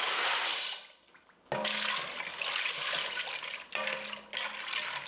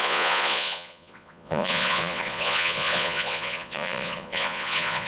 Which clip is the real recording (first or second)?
first